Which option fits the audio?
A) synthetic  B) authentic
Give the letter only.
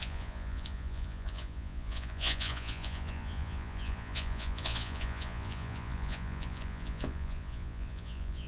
A